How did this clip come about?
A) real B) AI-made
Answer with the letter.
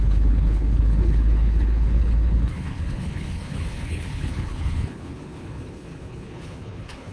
B